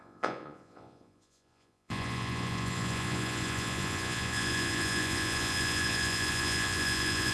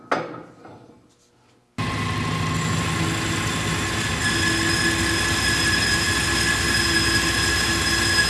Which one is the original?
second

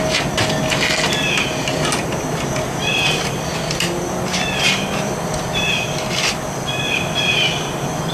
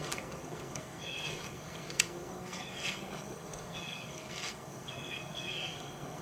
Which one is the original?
first